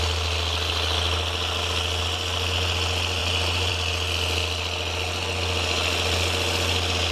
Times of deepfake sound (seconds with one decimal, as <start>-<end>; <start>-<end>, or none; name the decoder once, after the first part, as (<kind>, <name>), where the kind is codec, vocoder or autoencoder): 3.2-3.7 (vocoder, BigVGAN v2)